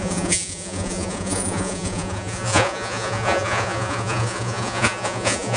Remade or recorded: remade